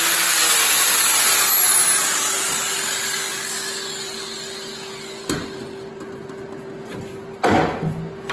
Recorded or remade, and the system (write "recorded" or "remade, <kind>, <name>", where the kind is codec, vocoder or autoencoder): recorded